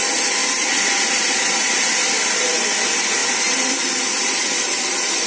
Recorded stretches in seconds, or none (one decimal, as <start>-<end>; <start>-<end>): 0.0-0.4; 2.5-3.2